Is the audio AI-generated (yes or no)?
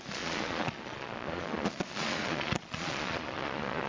yes